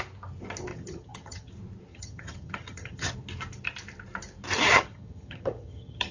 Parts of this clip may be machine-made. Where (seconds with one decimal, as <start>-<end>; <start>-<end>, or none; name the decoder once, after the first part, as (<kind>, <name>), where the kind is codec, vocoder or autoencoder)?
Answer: 0.7-1.5 (vocoder, HiFi-GAN); 1.9-3.1; 4.7-6.1